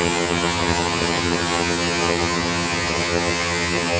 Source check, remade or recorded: remade